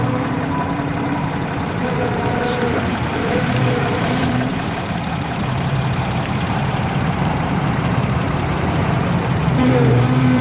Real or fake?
fake